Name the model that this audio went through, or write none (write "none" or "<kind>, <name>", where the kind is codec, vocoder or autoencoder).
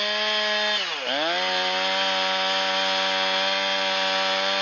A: none